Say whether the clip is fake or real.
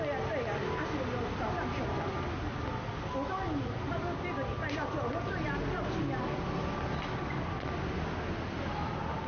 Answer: real